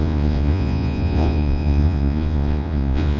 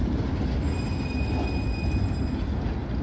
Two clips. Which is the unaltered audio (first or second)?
second